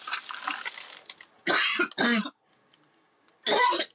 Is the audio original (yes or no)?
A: yes